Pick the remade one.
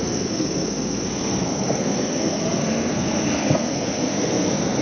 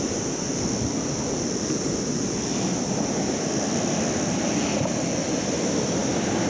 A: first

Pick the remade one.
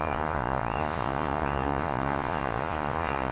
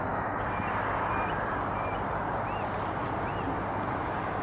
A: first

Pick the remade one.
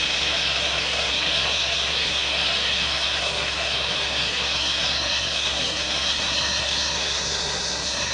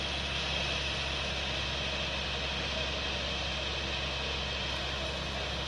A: first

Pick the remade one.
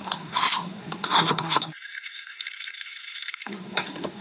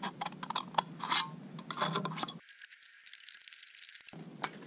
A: first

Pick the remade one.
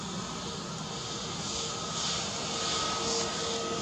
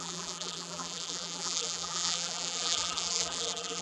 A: second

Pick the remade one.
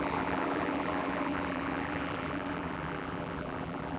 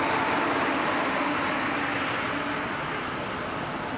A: first